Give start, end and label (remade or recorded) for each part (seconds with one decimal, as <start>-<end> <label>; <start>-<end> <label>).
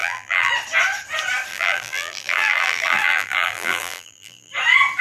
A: 0.0-0.5 remade; 0.5-1.5 recorded; 1.5-4.5 remade; 4.5-5.0 recorded